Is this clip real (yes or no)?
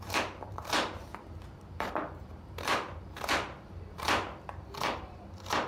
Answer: no